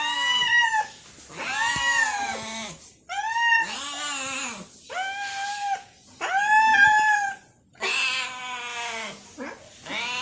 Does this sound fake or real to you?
real